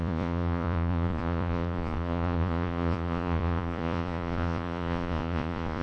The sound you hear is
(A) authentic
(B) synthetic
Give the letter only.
B